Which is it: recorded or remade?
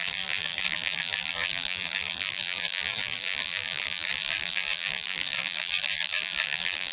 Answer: remade